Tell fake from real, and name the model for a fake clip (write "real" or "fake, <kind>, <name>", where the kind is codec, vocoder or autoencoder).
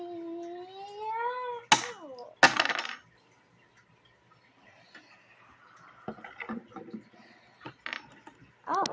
real